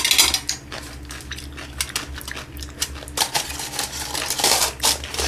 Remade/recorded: recorded